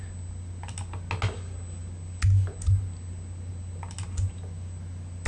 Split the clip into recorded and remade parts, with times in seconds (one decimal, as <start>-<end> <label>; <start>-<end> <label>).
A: 0.0-5.3 recorded